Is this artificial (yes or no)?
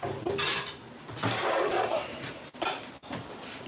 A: yes